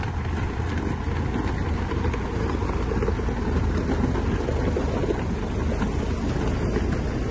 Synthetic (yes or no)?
no